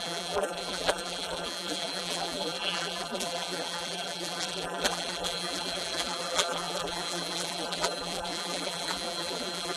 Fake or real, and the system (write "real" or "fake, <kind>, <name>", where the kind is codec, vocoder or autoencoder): fake, vocoder, BigVGAN v2